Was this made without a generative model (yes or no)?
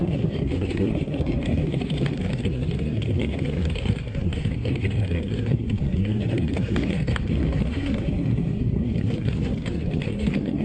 no